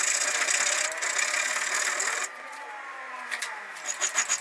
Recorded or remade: recorded